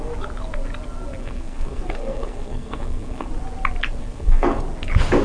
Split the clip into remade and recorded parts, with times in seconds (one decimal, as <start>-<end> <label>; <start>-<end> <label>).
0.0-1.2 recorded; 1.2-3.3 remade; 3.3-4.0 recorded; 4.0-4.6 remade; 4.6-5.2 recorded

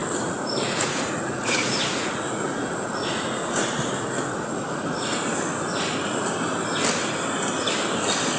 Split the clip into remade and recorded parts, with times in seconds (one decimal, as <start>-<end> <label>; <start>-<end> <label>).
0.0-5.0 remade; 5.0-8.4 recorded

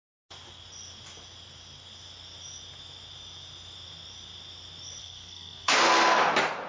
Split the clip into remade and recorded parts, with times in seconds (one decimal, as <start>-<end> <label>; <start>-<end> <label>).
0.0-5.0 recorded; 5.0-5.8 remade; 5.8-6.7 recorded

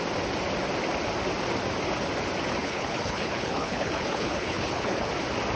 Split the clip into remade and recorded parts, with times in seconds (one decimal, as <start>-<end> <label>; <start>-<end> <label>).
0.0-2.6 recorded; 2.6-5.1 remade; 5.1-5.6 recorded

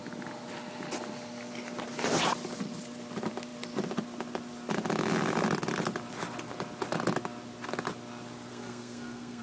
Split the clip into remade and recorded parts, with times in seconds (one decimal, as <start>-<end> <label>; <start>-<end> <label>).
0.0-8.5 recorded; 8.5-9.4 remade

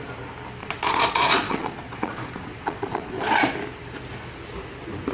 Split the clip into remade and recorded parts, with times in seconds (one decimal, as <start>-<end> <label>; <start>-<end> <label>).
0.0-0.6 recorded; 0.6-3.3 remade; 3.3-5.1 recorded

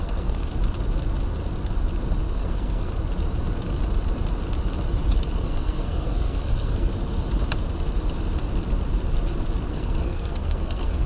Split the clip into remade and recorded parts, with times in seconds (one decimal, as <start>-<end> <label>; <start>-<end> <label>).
0.0-0.5 remade; 0.5-2.3 recorded; 2.3-2.9 remade; 2.9-5.4 recorded; 5.4-6.9 remade; 6.9-9.7 recorded; 9.7-11.1 remade